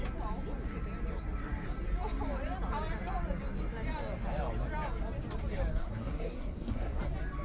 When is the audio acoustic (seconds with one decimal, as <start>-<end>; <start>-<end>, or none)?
0.0-5.8; 7.0-7.4